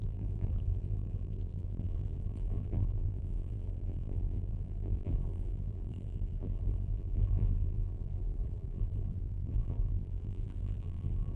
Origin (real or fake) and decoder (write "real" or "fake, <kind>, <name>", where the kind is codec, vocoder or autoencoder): fake, vocoder, BigVGAN v2